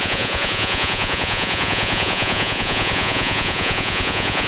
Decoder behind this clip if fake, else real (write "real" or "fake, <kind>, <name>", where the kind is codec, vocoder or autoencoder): fake, vocoder, Vocos